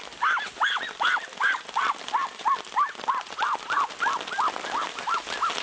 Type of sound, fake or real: real